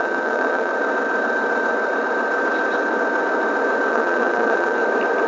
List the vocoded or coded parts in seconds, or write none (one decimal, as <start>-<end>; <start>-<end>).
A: 0.0-0.7; 3.9-4.8